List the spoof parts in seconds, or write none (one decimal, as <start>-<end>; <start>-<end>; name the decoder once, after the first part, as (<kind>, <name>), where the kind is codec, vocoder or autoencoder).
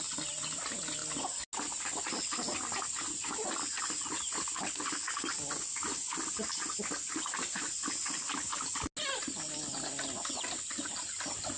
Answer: none